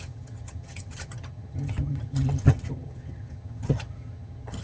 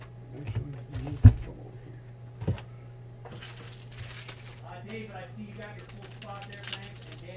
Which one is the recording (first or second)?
second